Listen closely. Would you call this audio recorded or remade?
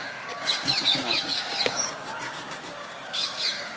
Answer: remade